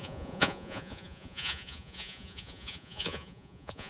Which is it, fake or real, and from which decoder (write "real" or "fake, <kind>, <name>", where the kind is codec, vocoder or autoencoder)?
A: fake, vocoder, Vocos